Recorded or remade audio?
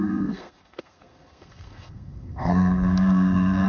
remade